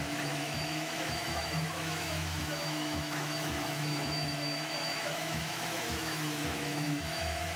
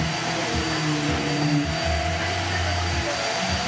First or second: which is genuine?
second